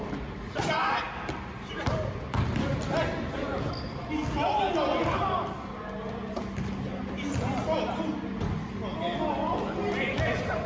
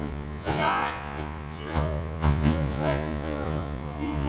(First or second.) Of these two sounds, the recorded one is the first